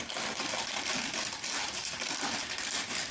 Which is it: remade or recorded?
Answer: recorded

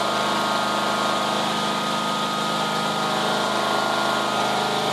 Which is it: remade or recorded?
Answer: recorded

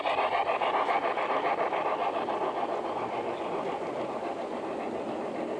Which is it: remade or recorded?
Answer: recorded